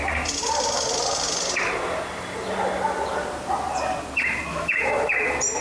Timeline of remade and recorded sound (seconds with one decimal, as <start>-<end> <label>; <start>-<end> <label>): 0.0-4.5 recorded; 4.5-5.0 remade; 5.0-5.6 recorded